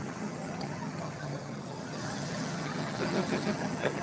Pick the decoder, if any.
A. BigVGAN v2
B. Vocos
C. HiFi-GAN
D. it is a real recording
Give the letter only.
C